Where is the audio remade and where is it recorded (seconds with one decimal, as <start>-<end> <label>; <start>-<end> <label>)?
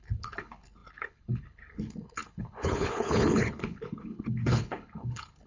0.0-5.5 remade